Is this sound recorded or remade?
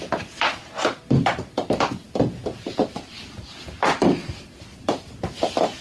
recorded